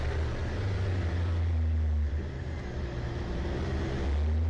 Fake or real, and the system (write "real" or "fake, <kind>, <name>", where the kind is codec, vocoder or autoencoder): real